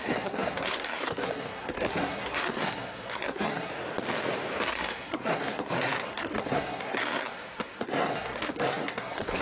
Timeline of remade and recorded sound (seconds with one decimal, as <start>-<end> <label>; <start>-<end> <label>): 0.0-3.7 remade; 3.7-4.6 recorded; 4.6-9.4 remade